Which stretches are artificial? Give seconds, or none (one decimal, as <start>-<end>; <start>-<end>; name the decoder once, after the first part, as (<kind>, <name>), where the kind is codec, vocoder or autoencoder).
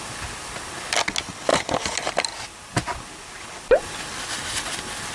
none